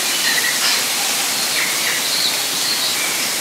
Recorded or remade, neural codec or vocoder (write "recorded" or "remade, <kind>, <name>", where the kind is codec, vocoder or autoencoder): recorded